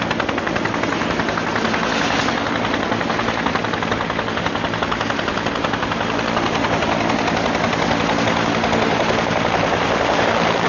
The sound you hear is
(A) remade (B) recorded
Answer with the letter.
B